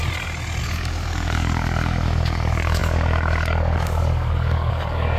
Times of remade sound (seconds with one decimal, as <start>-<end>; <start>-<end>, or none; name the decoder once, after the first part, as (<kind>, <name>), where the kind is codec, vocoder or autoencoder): 0.6-5.2 (codec, DAC)